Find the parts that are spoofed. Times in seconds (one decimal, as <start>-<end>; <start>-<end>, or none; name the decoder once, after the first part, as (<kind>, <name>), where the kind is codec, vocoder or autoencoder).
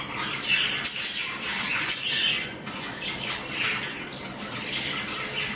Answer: 1.7-2.9 (vocoder, Vocos)